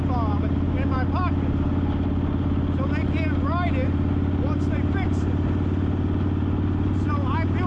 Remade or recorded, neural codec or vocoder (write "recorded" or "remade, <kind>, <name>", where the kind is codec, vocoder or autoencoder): recorded